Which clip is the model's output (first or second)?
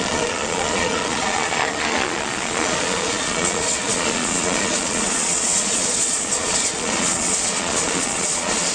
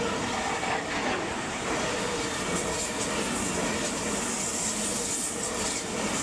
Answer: first